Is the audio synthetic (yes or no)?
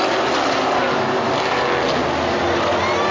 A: no